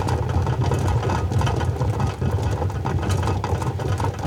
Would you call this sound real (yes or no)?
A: yes